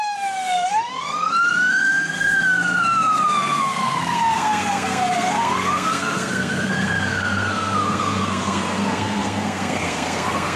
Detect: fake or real fake